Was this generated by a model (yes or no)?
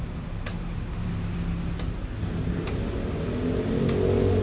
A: no